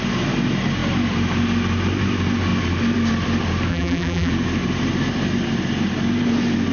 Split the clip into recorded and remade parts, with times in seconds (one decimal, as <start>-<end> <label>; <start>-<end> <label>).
0.0-3.7 recorded; 3.7-4.3 remade; 4.3-6.7 recorded